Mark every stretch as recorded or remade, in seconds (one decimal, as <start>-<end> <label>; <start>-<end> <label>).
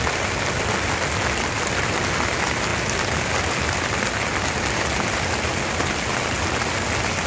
0.0-7.3 recorded